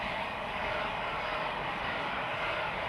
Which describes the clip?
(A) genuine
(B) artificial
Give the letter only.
B